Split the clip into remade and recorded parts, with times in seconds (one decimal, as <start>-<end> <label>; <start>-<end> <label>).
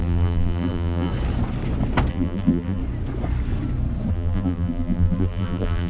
0.0-1.1 remade; 1.1-2.1 recorded; 2.1-2.8 remade; 2.8-4.1 recorded; 4.1-5.9 remade